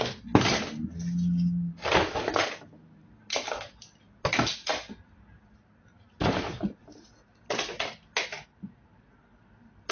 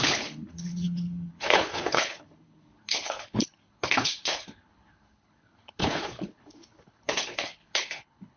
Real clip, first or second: first